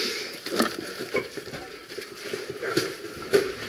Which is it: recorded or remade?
remade